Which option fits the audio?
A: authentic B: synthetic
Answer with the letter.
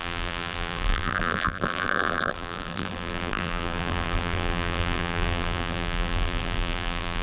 B